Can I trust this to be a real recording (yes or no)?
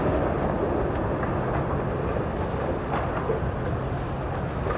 yes